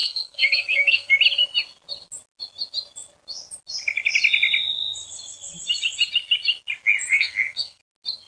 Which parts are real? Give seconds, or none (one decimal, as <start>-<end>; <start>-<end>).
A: 1.1-7.1; 7.8-8.3